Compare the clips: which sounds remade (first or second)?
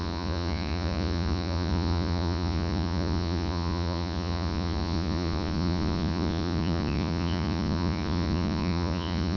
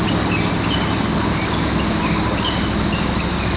first